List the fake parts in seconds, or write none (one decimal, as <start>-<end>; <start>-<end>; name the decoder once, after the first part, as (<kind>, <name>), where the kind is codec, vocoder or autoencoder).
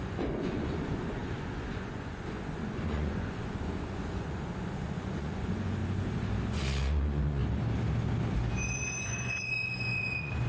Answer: 0.0-5.8 (vocoder, Vocos); 6.5-7.4; 8.7-10.5